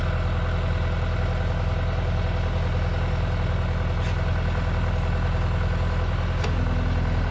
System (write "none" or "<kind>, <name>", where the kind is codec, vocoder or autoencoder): none